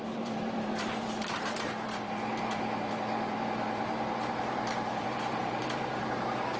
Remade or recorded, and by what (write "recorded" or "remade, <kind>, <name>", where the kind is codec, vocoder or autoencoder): remade, vocoder, BigVGAN v2